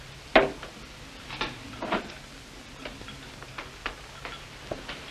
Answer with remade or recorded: recorded